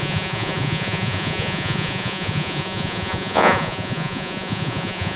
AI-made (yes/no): yes